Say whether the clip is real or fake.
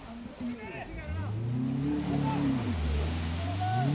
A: real